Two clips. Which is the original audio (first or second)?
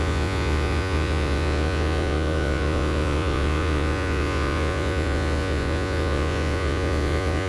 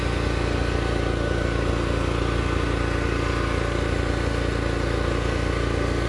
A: second